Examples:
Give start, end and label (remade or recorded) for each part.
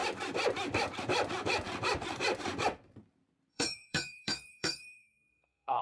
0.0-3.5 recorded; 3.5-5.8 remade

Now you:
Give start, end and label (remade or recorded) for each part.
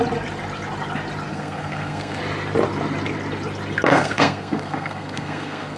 0.0-1.3 recorded; 1.3-2.2 remade; 2.2-3.9 recorded; 3.9-5.8 remade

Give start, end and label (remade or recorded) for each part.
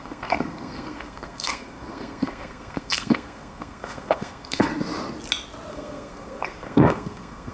0.0-4.7 remade; 4.7-5.7 recorded; 5.7-7.5 remade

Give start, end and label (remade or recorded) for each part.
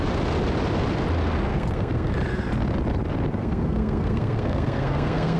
0.0-1.5 recorded; 1.5-2.1 remade; 2.1-3.4 recorded; 3.4-5.4 remade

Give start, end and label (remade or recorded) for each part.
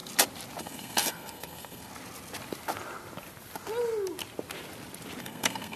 0.0-0.6 recorded; 0.6-1.9 remade; 1.9-5.2 recorded; 5.2-5.8 remade